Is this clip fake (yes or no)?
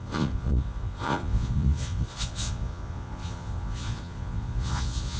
yes